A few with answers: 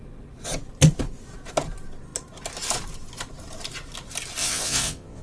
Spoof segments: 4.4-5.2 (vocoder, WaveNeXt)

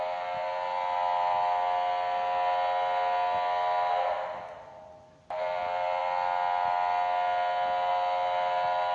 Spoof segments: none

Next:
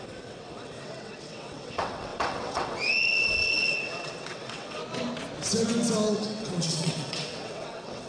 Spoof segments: 0.0-4.8 (vocoder, WaveNeXt); 6.1-8.1